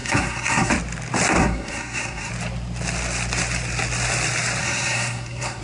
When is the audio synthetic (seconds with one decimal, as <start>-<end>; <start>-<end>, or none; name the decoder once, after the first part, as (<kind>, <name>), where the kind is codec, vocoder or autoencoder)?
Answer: 0.0-0.7 (codec, SNAC); 1.4-2.3; 4.6-5.6